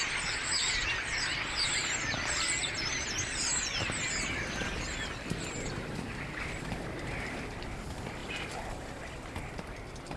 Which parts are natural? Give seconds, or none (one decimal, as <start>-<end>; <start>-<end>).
0.0-8.2; 9.0-10.2